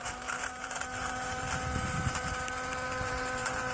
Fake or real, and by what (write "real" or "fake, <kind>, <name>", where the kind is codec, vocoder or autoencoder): fake, vocoder, BigVGAN v2